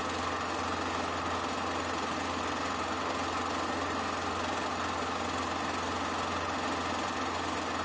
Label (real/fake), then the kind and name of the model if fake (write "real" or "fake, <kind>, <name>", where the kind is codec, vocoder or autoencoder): real